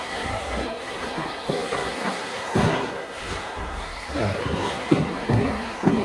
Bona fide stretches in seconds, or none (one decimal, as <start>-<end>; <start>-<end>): none